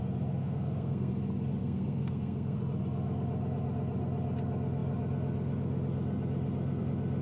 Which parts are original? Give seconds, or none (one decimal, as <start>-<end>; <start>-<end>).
0.0-0.4; 1.1-1.6; 2.6-7.2